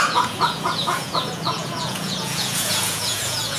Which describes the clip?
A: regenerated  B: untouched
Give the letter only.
A